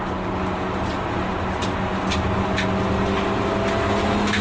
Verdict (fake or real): real